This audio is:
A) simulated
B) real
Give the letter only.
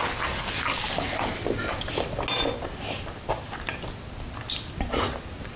B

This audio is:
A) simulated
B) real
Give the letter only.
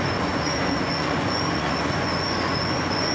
A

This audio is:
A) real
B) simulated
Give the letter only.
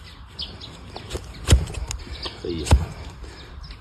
A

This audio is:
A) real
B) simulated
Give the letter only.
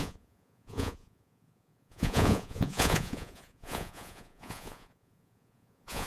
B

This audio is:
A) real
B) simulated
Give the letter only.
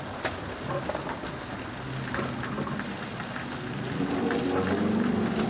A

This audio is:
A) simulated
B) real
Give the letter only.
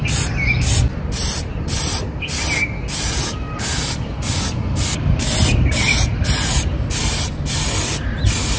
B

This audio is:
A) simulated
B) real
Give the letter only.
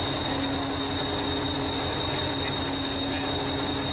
B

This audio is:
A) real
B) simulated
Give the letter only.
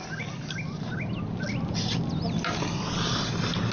A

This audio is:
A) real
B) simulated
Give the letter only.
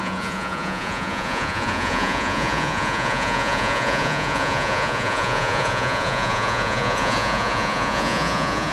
B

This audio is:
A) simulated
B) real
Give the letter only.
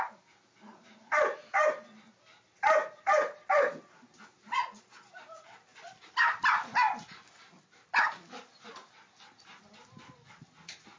B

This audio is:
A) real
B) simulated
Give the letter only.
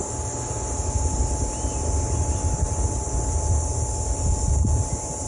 A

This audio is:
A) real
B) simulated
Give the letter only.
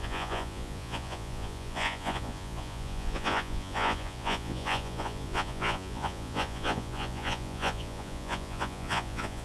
B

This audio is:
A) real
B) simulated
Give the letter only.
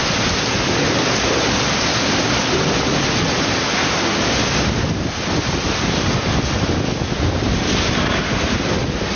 A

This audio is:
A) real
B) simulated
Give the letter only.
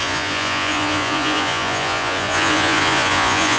B